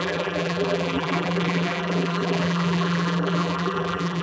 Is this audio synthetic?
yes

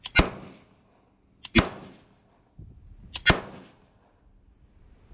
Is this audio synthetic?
no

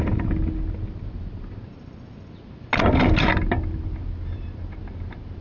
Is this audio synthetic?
no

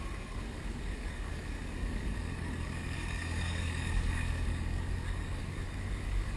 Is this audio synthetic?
yes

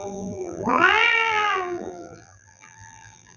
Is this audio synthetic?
yes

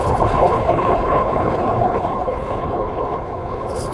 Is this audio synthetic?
yes